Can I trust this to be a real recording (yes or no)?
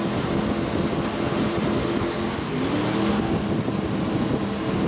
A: yes